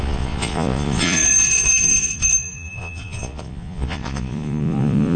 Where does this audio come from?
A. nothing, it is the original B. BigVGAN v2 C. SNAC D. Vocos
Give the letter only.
D